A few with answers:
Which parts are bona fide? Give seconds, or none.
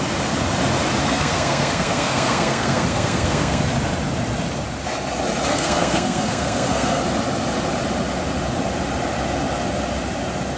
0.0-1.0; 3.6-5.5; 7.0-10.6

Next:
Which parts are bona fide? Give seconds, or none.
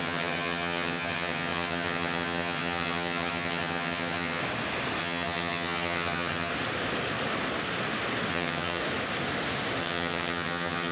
4.4-5.0; 6.5-8.3; 8.8-9.8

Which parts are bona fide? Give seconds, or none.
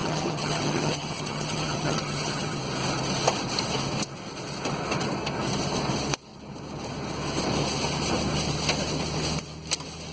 2.6-10.1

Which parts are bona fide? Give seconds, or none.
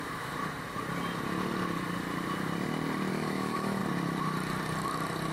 0.4-3.1; 3.8-5.3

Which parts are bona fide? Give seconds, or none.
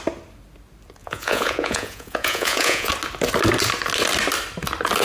0.0-1.0; 2.9-5.0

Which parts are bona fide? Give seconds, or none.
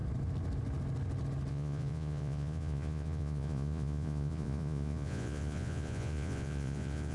0.0-1.5